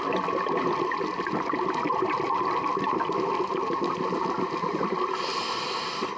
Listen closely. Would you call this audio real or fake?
real